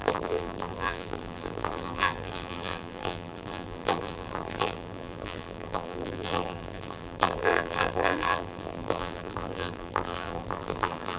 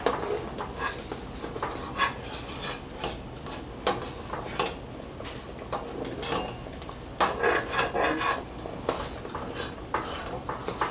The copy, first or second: first